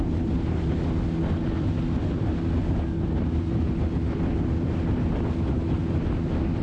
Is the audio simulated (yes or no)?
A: no